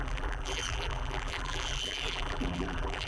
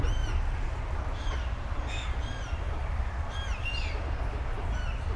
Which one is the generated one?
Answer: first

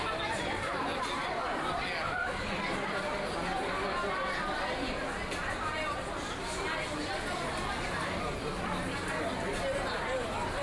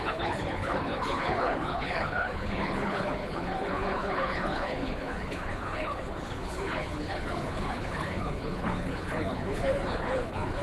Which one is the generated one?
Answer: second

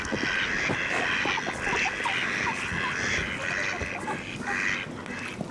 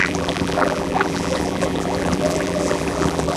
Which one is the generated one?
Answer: second